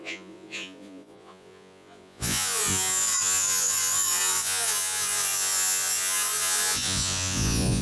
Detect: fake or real fake